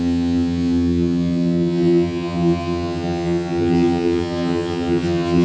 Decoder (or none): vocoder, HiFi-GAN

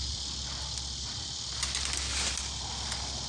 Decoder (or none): none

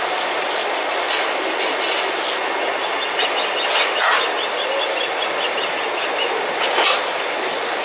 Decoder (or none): none